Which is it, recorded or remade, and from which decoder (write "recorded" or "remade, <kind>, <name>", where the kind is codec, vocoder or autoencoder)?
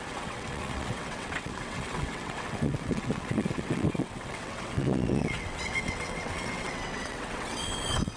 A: remade, vocoder, WaveNeXt